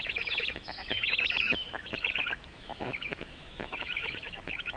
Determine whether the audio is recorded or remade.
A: remade